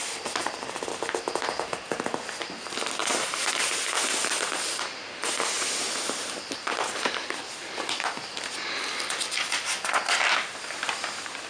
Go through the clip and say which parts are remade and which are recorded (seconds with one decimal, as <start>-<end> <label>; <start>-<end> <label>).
0.0-3.0 recorded; 3.0-7.4 remade; 7.4-11.5 recorded